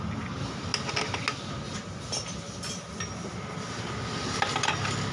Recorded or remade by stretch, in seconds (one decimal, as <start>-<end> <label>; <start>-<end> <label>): 0.0-5.1 recorded